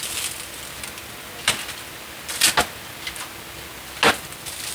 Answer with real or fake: real